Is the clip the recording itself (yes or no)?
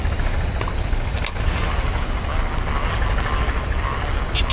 yes